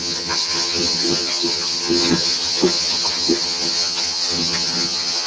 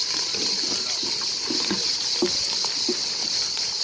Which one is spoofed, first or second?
first